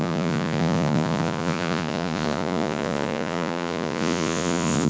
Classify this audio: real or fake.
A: fake